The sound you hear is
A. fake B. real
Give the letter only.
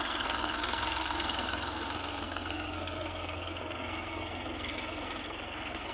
A